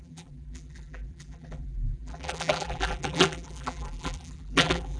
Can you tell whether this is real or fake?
fake